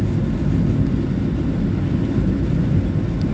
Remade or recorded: recorded